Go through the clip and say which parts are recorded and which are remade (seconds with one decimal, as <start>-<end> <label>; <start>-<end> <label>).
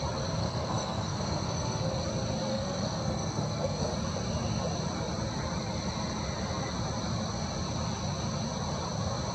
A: 0.0-0.4 recorded; 0.4-1.9 remade; 1.9-2.5 recorded; 2.5-3.9 remade; 3.9-9.3 recorded